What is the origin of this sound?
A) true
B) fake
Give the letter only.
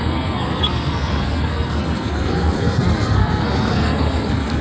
B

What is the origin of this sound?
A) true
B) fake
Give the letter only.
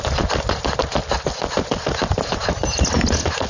A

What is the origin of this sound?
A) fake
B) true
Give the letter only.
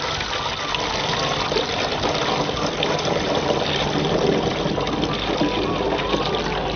B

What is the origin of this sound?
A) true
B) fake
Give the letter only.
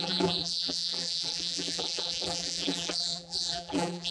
B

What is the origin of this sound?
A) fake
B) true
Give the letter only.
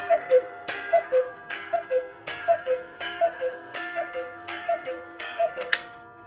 A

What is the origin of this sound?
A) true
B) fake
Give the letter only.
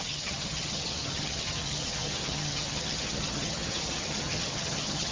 B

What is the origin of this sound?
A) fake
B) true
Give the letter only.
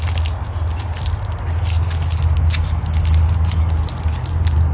B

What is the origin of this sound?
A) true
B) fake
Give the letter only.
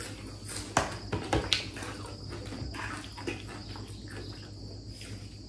A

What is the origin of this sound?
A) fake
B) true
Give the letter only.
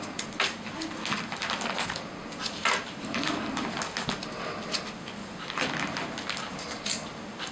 B